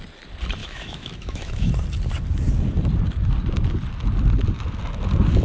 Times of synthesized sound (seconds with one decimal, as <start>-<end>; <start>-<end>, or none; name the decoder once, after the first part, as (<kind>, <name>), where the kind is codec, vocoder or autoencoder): 0.6-1.7 (autoencoder, DAC-VAE)